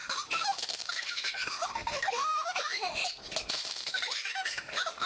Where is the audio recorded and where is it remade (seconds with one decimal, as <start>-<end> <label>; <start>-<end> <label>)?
0.0-3.0 remade; 3.0-3.5 recorded; 3.5-5.1 remade